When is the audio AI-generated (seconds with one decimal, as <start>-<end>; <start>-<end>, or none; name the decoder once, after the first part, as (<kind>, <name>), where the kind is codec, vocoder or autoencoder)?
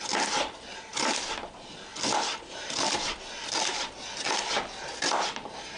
none